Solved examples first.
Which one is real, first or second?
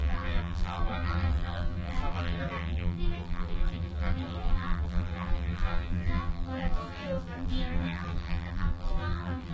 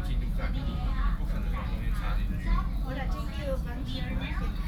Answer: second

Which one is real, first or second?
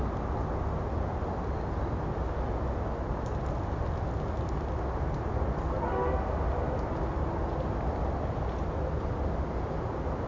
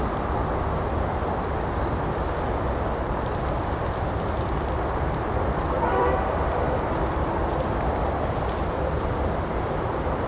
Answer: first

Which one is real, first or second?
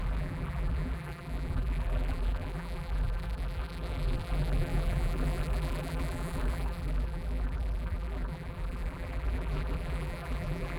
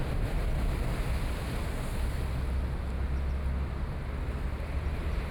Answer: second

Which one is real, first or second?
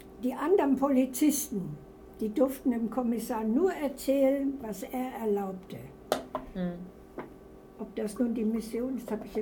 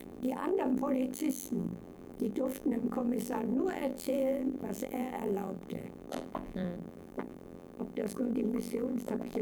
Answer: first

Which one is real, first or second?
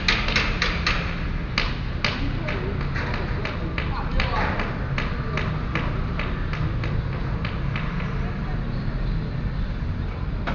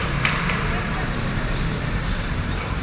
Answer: first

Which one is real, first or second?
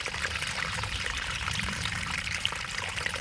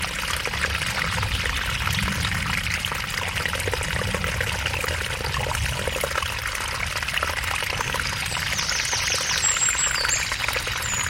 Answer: second